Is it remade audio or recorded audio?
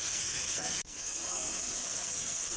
remade